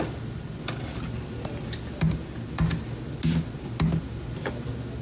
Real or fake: real